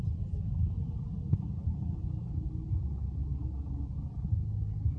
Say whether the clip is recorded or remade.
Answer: recorded